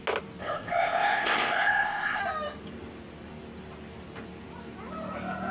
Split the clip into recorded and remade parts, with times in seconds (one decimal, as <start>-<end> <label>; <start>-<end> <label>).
0.0-0.4 recorded; 0.4-2.2 remade; 2.2-5.5 recorded